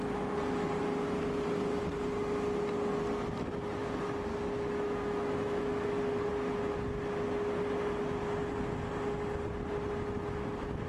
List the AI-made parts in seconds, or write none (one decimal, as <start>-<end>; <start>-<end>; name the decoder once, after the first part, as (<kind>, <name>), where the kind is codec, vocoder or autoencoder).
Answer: 4.3-6.3 (autoencoder, DAC-VAE)